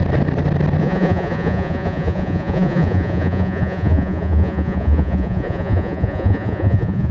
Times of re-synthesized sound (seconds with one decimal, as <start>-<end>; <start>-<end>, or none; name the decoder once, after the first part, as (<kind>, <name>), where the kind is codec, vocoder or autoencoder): 0.8-7.1 (vocoder, Vocos)